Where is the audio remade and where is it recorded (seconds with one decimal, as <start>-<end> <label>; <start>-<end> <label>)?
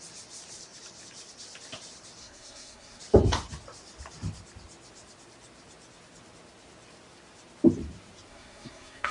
0.0-2.2 recorded; 2.2-3.0 remade; 3.0-8.3 recorded; 8.3-9.1 remade